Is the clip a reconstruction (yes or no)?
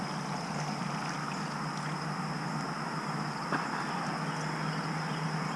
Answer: no